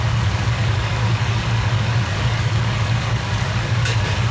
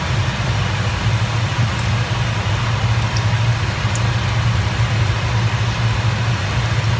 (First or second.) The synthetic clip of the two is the first